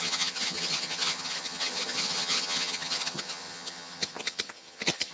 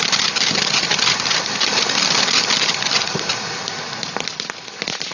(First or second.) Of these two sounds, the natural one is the second